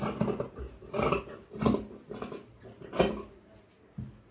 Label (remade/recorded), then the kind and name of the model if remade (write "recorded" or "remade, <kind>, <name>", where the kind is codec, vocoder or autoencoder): recorded